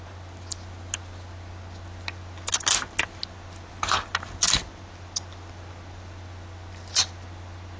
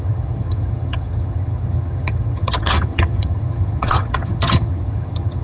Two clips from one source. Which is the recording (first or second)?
first